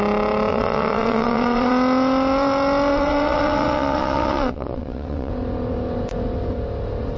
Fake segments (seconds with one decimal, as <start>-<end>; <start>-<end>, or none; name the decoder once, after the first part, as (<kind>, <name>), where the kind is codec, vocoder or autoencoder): 0.5-1.7 (vocoder, WaveNeXt); 2.9-5.3